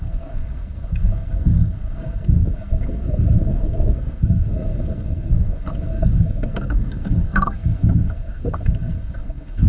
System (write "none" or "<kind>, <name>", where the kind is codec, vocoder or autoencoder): codec, SNAC